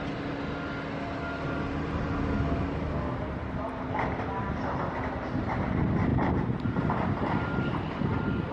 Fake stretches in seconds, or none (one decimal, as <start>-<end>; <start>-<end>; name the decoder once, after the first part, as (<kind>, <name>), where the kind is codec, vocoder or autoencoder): 6.1-6.9 (vocoder, BigVGAN v2)